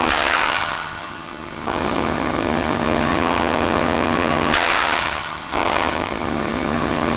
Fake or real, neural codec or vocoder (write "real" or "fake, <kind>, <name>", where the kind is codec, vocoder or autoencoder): fake, vocoder, HiFi-GAN